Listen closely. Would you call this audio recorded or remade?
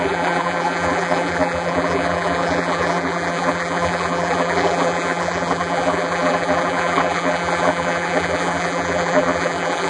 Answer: remade